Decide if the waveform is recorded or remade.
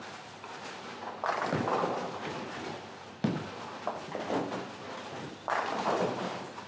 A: recorded